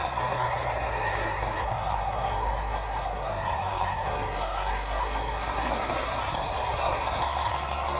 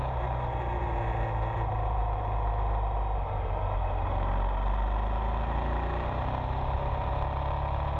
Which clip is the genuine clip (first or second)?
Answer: second